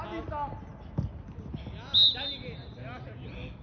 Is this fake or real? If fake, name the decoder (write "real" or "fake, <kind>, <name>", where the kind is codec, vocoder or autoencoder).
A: real